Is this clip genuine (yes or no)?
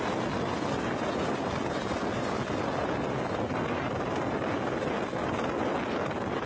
yes